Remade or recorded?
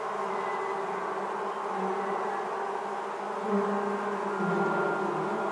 recorded